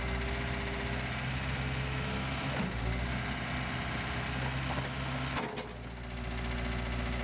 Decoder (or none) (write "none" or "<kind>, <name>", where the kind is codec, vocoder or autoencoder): none